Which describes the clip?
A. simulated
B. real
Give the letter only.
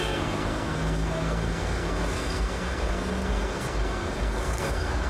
A